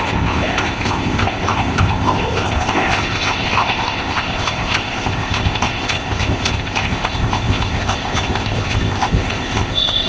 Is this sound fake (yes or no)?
yes